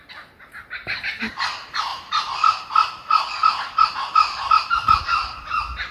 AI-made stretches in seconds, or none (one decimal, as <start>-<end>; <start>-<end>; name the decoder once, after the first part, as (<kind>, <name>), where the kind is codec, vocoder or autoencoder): 0.8-1.4 (vocoder, BigVGAN v2); 1.9-3.3; 4.6-5.9